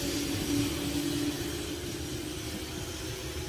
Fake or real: real